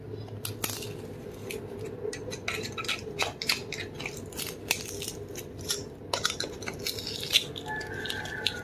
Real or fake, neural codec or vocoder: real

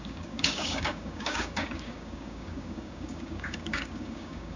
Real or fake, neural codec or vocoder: fake, codec, DAC